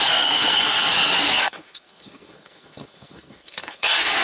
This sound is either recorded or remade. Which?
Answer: remade